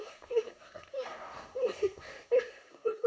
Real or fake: fake